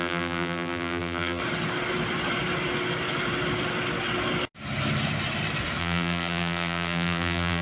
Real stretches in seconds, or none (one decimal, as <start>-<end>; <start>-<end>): 1.4-5.8